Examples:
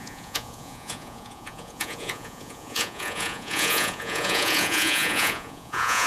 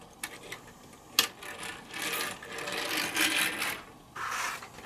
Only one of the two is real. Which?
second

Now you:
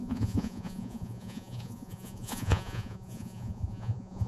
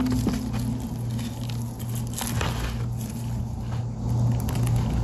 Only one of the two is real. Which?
second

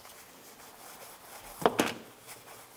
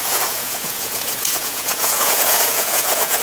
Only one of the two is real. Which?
first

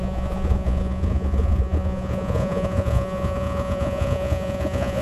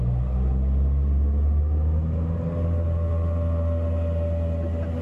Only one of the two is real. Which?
second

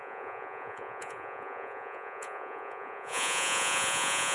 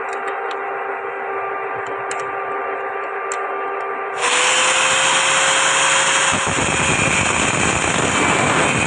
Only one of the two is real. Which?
second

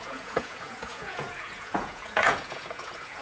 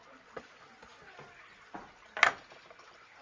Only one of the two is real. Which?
second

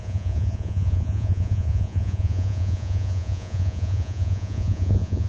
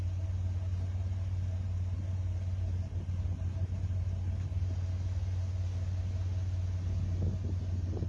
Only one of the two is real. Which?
second